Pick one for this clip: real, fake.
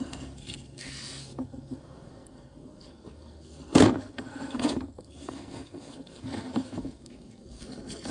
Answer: fake